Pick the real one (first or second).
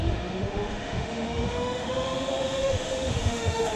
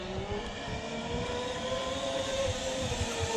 second